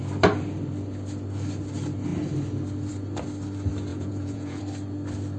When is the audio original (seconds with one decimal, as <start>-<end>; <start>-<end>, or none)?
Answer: 0.0-3.9; 4.6-5.4

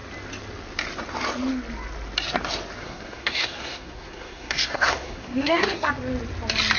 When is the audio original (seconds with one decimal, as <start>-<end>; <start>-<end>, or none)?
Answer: 0.0-2.8; 5.9-6.8

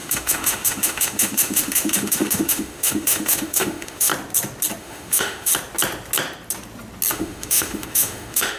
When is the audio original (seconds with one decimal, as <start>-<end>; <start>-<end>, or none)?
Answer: 4.1-4.8; 5.5-7.1

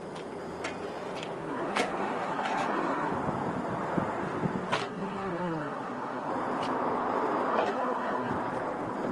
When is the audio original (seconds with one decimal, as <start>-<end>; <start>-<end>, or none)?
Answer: 0.0-1.4; 3.1-4.8; 6.3-7.5; 8.3-9.1

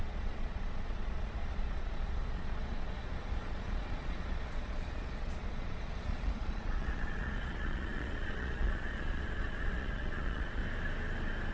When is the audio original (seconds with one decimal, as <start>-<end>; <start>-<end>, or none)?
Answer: 10.6-11.5

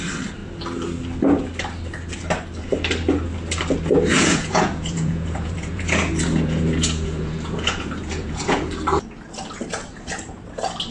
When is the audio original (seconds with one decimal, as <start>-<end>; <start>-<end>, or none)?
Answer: 0.0-4.1; 8.7-10.9